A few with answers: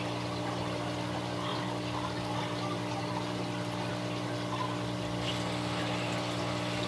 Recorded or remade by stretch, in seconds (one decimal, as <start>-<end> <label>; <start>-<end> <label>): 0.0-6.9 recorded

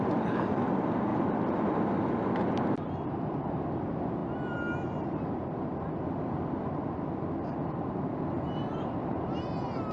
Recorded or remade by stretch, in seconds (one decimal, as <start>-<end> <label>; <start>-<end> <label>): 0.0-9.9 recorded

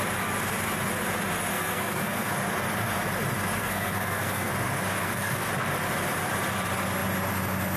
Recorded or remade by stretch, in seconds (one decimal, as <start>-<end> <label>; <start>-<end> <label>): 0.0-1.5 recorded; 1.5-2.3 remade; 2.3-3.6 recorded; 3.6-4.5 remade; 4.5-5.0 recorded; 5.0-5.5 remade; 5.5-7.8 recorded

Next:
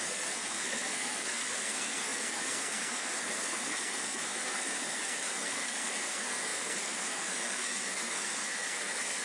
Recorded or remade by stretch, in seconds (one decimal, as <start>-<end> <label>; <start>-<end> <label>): 0.0-9.2 remade

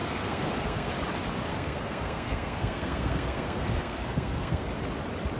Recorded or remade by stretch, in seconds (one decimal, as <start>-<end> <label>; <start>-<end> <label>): 0.0-0.9 remade; 0.9-1.5 recorded; 1.5-4.7 remade; 4.7-5.4 recorded

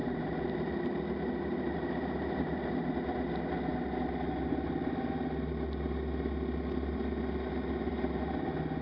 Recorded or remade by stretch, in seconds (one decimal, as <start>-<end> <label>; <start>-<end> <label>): 0.0-8.8 recorded

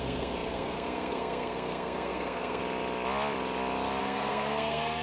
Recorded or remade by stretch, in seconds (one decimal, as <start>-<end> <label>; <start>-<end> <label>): 0.0-2.6 remade; 2.6-4.0 recorded; 4.0-5.0 remade

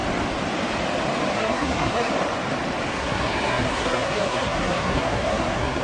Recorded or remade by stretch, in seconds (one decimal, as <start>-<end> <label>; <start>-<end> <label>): 0.0-1.3 recorded; 1.3-2.1 remade; 2.1-2.9 recorded; 2.9-5.8 remade